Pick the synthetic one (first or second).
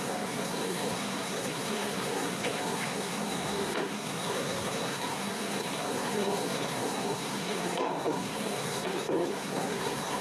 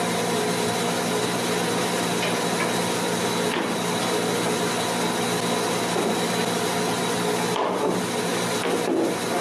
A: first